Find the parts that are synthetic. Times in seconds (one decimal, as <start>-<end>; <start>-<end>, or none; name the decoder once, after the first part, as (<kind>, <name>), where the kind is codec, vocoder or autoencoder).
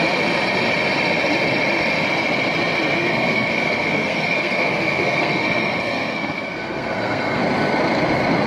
3.0-7.4 (codec, SNAC)